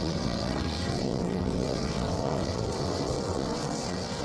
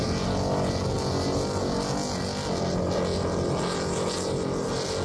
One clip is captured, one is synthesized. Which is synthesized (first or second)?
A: first